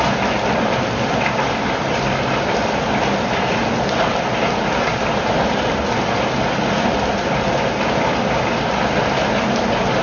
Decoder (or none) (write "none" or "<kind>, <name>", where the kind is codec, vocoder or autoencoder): none